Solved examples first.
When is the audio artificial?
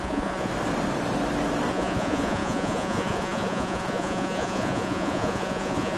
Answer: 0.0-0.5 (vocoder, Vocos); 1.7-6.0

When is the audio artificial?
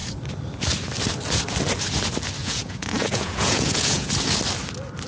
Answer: 2.4-4.1 (vocoder, Vocos)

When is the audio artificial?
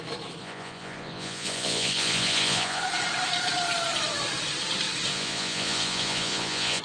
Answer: 0.4-2.8 (vocoder, Vocos); 5.1-6.8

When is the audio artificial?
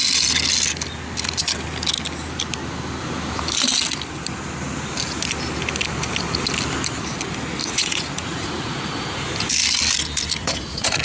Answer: 7.6-8.8 (vocoder, Vocos); 10.4-11.0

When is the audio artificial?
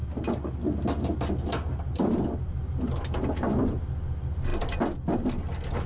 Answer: none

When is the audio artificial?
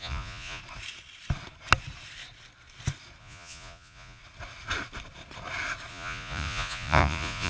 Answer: 0.0-0.6 (vocoder, Vocos); 3.2-4.2; 5.9-7.5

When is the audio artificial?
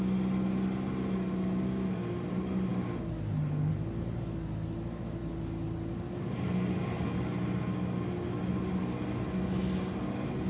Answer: none